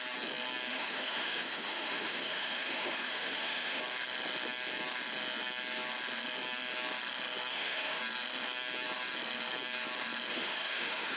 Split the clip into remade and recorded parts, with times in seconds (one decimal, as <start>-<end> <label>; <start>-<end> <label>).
0.0-0.7 recorded; 0.7-3.8 remade; 3.8-7.5 recorded; 7.5-8.0 remade; 8.0-10.3 recorded; 10.3-11.2 remade